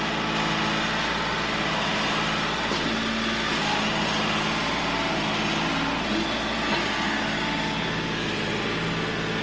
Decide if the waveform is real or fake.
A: real